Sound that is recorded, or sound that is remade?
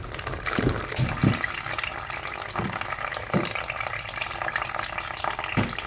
recorded